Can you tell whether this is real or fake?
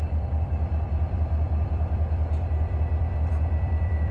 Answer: fake